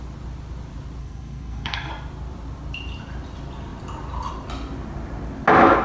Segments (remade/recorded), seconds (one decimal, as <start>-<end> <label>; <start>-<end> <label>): 0.0-1.0 recorded; 1.0-1.9 remade; 1.9-5.8 recorded